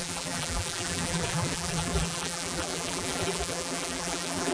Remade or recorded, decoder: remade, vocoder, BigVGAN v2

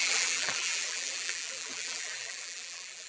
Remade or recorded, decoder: remade, vocoder, BigVGAN v2